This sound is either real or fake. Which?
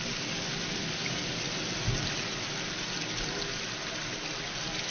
real